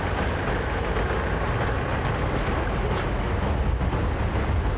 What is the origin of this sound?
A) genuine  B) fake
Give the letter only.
A